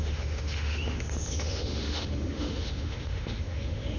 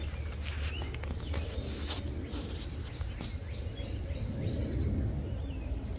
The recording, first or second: second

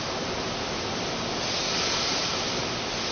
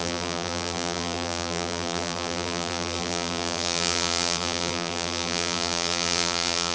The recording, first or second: first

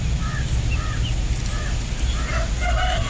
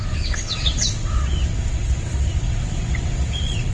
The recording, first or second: first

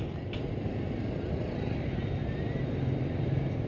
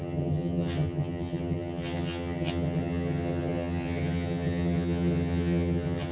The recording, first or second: first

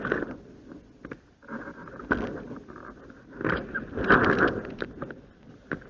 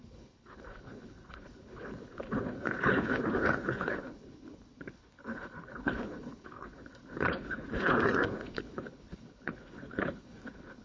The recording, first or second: first